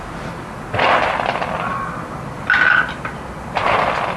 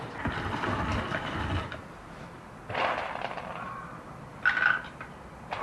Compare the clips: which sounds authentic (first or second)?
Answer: first